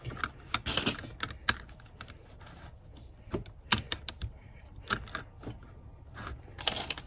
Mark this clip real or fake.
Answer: real